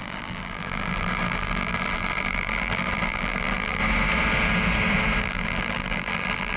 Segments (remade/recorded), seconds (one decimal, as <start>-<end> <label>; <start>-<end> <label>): 0.0-3.8 remade; 3.8-5.2 recorded; 5.2-6.6 remade